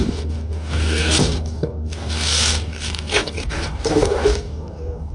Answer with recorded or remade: remade